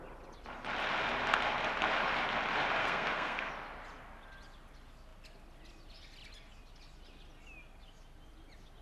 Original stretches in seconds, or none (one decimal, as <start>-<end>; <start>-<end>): 0.0-2.8; 3.5-8.8